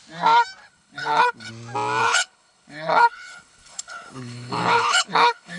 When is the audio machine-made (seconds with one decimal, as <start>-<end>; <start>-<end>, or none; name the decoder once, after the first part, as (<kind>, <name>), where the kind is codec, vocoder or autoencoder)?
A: 0.6-1.5 (codec, HILCodec); 2.0-5.6